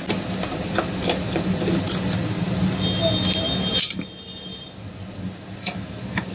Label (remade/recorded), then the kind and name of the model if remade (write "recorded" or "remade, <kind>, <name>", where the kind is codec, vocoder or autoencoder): recorded